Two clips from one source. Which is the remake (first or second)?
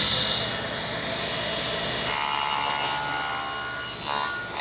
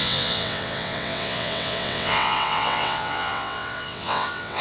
second